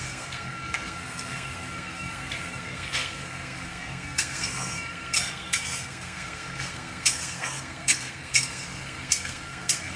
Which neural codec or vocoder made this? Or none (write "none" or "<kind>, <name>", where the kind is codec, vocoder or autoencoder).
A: codec, SNAC